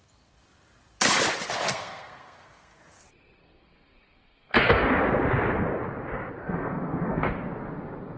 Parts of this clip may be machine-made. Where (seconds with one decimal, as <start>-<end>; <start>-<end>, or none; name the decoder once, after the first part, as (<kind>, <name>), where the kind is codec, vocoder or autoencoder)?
1.7-2.8 (codec, SNAC); 3.4-4.9; 6.4-7.3